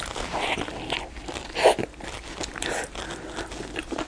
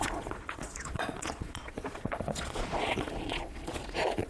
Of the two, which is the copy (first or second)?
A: second